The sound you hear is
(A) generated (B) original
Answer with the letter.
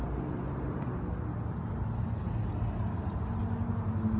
B